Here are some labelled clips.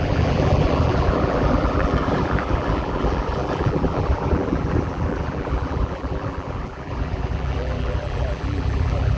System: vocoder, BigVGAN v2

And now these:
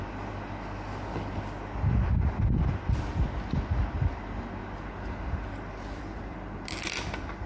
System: none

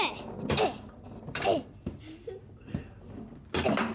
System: none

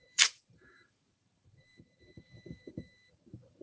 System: vocoder, BigVGAN v2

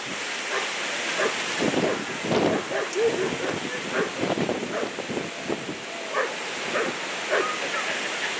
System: none